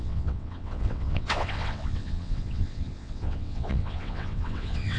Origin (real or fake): fake